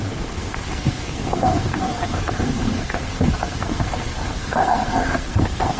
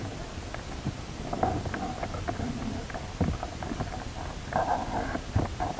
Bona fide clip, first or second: second